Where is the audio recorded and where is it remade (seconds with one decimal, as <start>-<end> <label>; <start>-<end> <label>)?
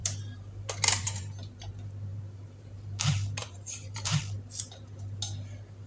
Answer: 0.0-1.7 remade; 1.7-2.1 recorded; 2.1-4.2 remade; 4.2-5.9 recorded